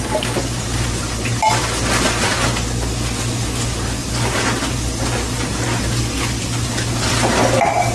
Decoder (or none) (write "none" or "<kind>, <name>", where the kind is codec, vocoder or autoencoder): none